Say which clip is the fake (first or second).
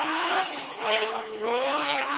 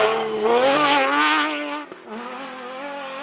first